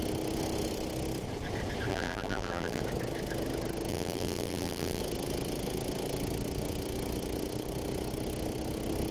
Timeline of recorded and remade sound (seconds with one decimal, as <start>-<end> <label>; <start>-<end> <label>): 0.0-1.9 recorded; 1.9-2.8 remade; 2.8-3.9 recorded; 3.9-5.0 remade; 5.0-9.1 recorded